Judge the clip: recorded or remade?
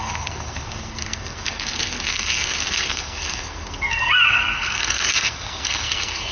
remade